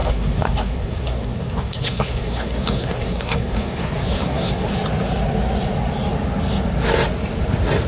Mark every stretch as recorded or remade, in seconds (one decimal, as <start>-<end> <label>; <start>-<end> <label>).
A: 0.0-4.7 remade; 4.7-7.9 recorded

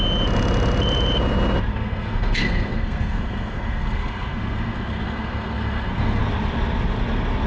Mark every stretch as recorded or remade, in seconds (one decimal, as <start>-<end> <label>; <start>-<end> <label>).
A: 0.0-1.7 recorded; 1.7-6.2 remade; 6.2-7.5 recorded

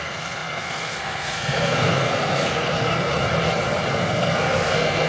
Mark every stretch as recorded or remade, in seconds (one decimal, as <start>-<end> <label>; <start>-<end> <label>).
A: 0.0-3.1 remade; 3.1-3.9 recorded; 3.9-5.1 remade